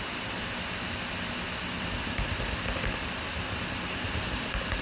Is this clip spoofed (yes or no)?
no